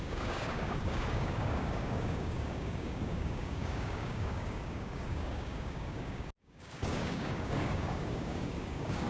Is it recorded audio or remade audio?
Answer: remade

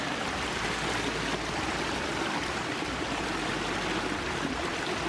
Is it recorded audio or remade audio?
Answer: remade